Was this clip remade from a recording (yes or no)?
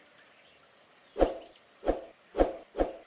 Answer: no